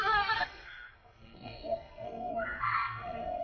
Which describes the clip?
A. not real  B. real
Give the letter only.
A